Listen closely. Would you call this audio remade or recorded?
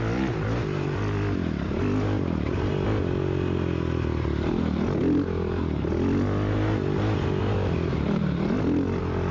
recorded